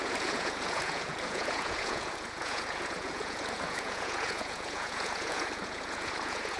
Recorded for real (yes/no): no